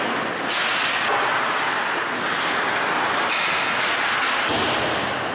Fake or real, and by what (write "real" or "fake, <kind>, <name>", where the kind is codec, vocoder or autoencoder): real